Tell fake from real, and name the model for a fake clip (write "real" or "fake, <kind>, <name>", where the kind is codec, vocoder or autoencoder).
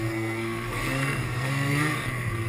fake, codec, SNAC